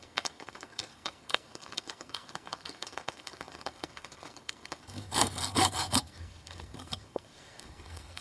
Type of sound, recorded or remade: remade